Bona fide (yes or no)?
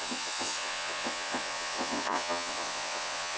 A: no